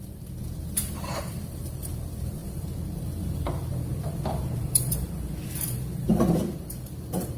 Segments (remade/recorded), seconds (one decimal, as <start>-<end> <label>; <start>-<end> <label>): 0.0-7.4 remade